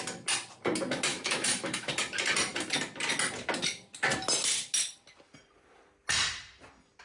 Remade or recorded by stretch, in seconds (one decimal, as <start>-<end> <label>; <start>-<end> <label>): 0.0-1.1 recorded; 1.1-1.9 remade; 1.9-7.0 recorded